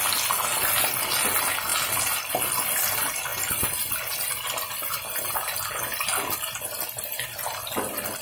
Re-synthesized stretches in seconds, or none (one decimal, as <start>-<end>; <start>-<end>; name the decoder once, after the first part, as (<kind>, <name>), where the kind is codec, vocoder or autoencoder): none